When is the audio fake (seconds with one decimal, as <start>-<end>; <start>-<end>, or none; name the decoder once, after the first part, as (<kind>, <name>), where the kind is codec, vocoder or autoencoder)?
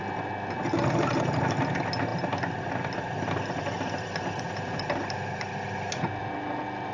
none